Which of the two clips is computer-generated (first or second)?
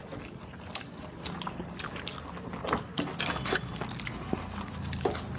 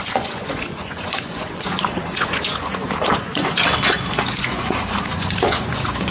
second